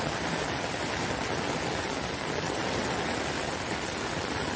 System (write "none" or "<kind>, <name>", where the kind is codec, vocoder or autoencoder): none